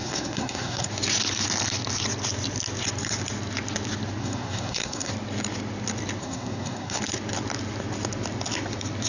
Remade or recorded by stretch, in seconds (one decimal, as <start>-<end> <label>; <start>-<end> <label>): 0.0-0.9 remade; 0.9-4.2 recorded; 4.2-5.1 remade; 5.1-6.2 recorded; 6.2-7.0 remade; 7.0-9.1 recorded